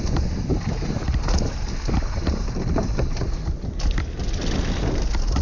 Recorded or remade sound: recorded